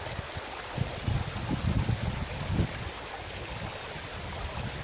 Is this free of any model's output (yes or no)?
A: yes